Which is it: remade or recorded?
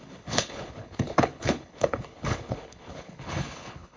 remade